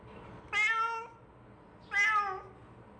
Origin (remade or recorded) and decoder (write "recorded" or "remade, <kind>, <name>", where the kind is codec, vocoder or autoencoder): recorded